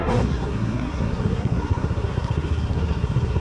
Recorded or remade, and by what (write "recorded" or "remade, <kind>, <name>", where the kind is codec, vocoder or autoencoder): remade, codec, SNAC